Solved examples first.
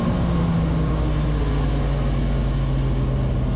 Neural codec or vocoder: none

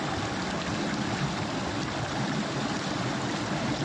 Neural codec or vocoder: none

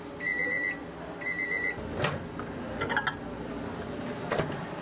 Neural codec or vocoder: none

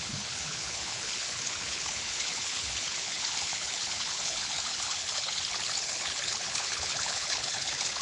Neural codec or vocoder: codec, HILCodec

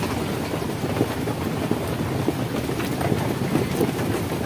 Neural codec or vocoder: none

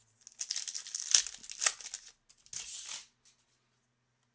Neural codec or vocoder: none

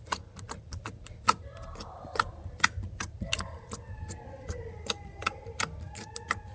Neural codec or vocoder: none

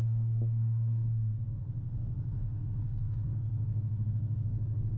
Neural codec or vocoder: codec, SNAC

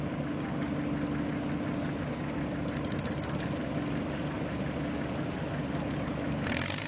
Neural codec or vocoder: none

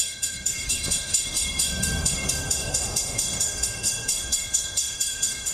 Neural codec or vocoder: autoencoder, DAC-VAE